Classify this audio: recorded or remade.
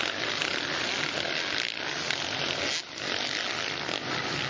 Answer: recorded